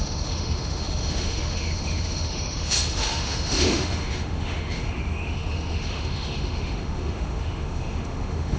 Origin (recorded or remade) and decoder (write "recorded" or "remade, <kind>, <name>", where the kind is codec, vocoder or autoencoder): remade, autoencoder, DAC-VAE